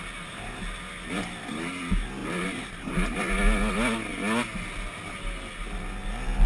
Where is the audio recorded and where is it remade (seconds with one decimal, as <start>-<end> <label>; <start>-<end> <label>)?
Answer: 0.0-2.2 recorded; 2.2-3.3 remade; 3.3-6.5 recorded

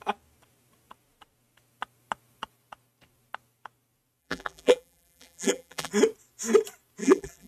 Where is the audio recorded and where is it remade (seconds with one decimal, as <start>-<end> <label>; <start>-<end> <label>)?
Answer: 0.0-4.2 recorded; 4.2-5.9 remade; 5.9-7.0 recorded; 7.0-7.5 remade

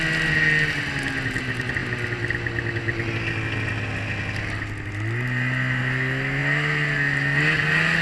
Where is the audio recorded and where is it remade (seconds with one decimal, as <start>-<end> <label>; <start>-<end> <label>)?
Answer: 0.0-8.0 recorded

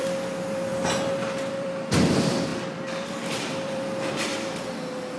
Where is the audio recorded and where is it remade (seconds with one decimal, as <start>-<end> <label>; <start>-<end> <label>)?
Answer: 0.0-0.7 remade; 0.7-1.5 recorded; 1.5-5.2 remade

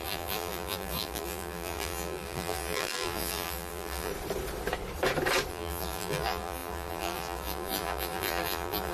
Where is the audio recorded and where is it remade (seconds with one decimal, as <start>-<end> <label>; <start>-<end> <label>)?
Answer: 0.0-4.1 remade; 4.1-5.5 recorded; 5.5-8.9 remade

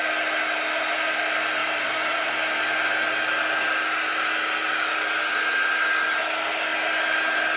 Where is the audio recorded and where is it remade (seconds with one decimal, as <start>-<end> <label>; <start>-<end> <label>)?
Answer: 0.0-1.6 recorded; 1.6-2.3 remade; 2.3-7.6 recorded

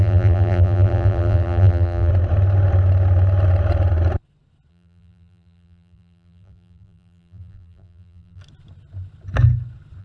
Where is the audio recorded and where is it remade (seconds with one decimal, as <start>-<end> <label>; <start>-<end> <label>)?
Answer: 0.0-2.1 remade; 2.1-4.7 recorded; 4.7-8.4 remade; 8.4-10.0 recorded

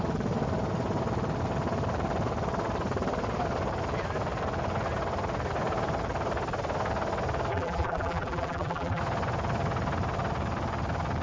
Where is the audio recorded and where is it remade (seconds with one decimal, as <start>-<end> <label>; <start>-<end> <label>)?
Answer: 0.0-7.5 recorded; 7.5-9.0 remade; 9.0-11.2 recorded